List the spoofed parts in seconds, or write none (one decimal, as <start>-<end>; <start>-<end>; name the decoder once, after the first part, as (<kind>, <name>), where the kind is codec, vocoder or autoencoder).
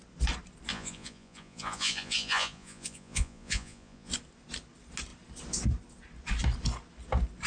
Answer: 0.7-4.1 (vocoder, Vocos)